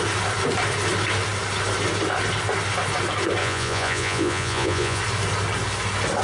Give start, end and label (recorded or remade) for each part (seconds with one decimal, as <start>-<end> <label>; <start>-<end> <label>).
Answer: 0.0-3.4 recorded; 3.4-5.0 remade; 5.0-6.2 recorded